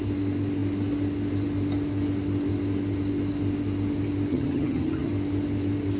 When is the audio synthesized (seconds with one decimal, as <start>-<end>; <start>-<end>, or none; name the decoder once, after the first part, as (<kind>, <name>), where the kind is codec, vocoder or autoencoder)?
4.3-5.1 (vocoder, HiFi-GAN)